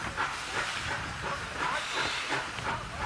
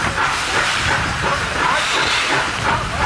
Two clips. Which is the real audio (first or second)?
first